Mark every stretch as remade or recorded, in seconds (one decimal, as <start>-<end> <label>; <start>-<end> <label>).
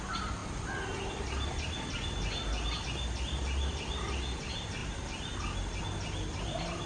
0.0-6.9 recorded